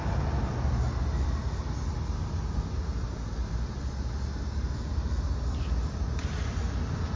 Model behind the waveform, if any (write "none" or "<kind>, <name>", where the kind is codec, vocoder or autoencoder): none